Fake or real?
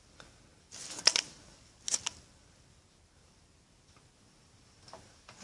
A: real